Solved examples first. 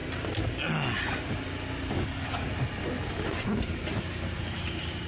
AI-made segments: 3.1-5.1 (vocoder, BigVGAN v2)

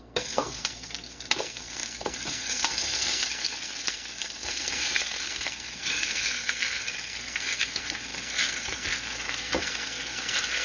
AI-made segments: 0.0-10.6 (codec, SNAC)

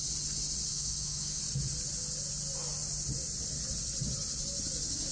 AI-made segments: 0.7-1.4 (autoencoder, DAC-VAE)

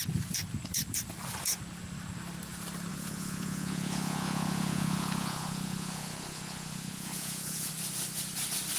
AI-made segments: 2.9-7.7 (vocoder, Vocos)